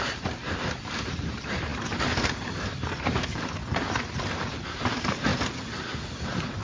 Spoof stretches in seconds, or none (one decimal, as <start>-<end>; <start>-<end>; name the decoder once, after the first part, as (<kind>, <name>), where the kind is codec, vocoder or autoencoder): 0.0-1.7 (vocoder, BigVGAN v2); 2.6-3.6; 4.8-6.6